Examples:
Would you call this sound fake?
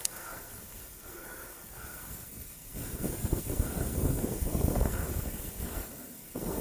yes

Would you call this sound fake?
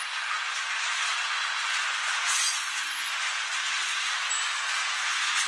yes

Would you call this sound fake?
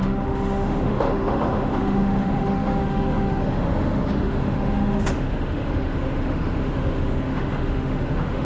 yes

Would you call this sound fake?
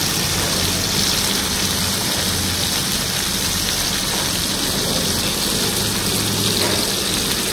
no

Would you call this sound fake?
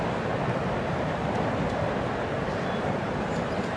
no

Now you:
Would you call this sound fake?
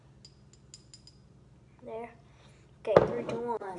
no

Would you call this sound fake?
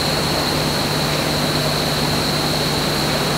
no